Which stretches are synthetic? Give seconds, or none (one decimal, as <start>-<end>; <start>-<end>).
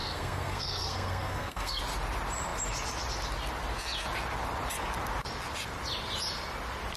0.0-1.8